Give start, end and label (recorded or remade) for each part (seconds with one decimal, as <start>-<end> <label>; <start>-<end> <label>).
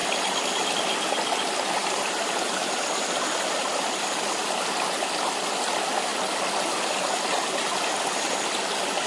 0.0-9.1 recorded